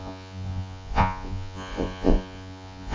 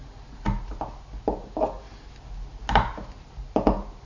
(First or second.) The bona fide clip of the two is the second